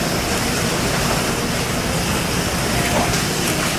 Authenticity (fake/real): fake